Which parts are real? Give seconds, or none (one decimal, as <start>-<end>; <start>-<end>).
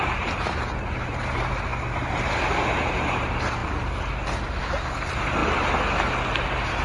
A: 3.6-4.6; 5.4-6.3